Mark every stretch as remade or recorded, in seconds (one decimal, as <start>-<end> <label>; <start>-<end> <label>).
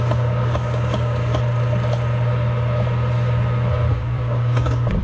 0.0-1.3 remade; 1.3-3.9 recorded; 3.9-5.0 remade